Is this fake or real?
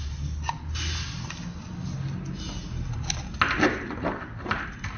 real